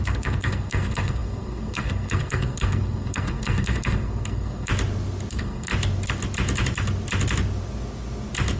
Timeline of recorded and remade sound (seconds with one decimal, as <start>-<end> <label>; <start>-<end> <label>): 0.0-4.7 remade; 4.7-5.3 recorded; 5.3-5.7 remade; 5.7-8.6 recorded